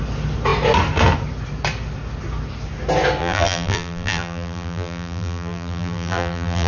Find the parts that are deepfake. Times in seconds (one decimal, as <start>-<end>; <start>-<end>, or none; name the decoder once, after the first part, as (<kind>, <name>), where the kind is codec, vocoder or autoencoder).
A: 3.2-6.7 (vocoder, BigVGAN v2)